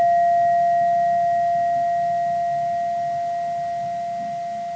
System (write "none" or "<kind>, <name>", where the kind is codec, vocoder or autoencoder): none